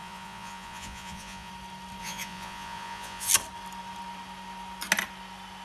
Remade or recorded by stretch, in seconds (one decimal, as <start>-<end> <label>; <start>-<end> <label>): 0.0-1.5 remade; 1.5-2.0 recorded; 2.0-3.3 remade; 3.3-5.6 recorded